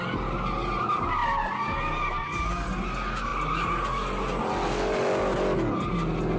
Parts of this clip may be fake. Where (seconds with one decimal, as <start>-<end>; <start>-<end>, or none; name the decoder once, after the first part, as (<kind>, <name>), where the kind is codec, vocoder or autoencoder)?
none